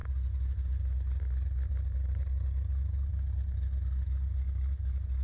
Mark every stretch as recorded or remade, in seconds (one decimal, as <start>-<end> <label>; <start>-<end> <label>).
0.0-5.2 recorded